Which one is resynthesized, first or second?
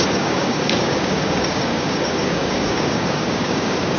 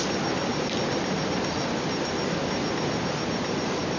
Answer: first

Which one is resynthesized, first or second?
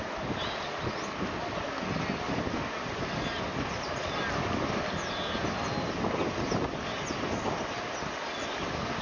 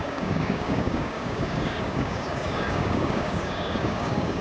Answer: second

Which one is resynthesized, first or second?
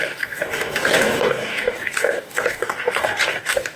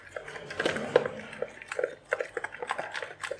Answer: first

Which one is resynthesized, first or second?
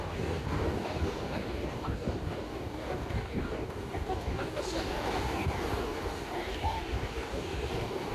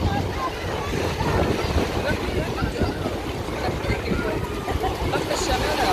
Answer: first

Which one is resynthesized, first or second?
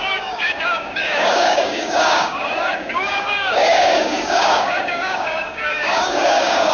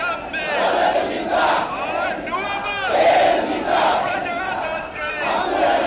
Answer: first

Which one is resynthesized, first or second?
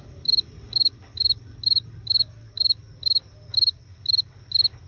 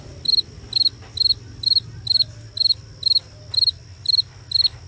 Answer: first